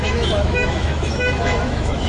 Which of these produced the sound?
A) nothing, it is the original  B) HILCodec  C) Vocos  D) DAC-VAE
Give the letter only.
D